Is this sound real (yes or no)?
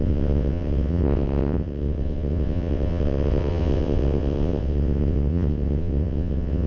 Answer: no